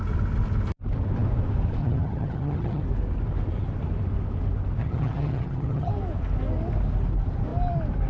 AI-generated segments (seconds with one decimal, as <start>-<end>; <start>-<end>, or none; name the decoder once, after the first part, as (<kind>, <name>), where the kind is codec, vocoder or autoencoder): 1.8-2.8 (vocoder, HiFi-GAN); 4.8-5.9